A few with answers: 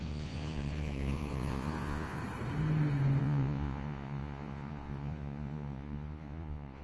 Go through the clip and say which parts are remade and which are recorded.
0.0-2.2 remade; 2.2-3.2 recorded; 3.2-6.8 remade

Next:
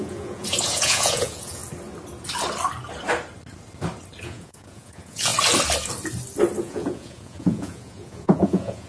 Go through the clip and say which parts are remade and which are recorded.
0.0-1.6 remade; 1.6-4.2 recorded; 4.2-5.3 remade; 5.3-6.6 recorded; 6.6-8.9 remade

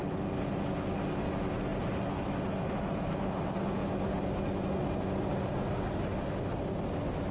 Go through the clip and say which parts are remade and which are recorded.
0.0-7.3 recorded

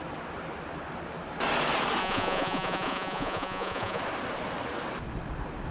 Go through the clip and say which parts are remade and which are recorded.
0.0-2.0 recorded; 2.0-4.0 remade; 4.0-5.7 recorded

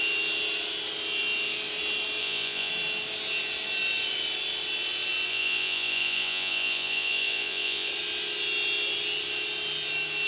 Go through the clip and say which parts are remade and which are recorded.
0.0-2.2 recorded; 2.2-2.7 remade; 2.7-5.3 recorded; 5.3-7.9 remade; 7.9-10.3 recorded

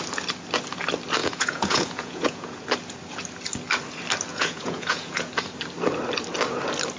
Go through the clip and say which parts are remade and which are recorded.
0.0-1.2 recorded; 1.2-2.6 remade; 2.6-4.3 recorded; 4.3-5.3 remade; 5.3-7.0 recorded